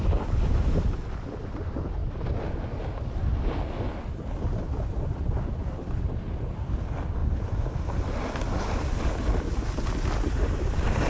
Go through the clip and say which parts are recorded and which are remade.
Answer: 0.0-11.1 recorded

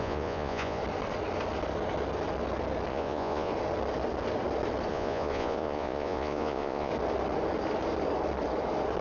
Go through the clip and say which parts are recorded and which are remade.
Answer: 0.0-0.8 remade; 0.8-2.9 recorded; 2.9-3.5 remade; 3.5-4.9 recorded; 4.9-6.9 remade; 6.9-9.0 recorded

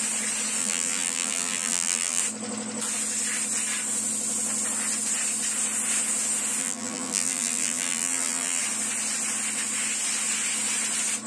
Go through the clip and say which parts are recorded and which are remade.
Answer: 0.0-0.6 recorded; 0.6-2.2 remade; 2.2-6.6 recorded; 6.6-8.6 remade; 8.6-11.3 recorded

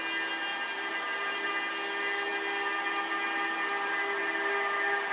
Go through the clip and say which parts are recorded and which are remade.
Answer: 0.0-0.5 recorded; 0.5-1.5 remade; 1.5-5.1 recorded

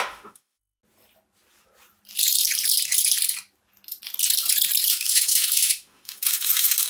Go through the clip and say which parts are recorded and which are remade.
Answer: 0.0-0.8 remade; 0.8-4.9 recorded; 4.9-6.9 remade